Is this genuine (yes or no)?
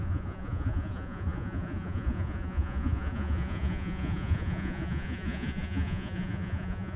no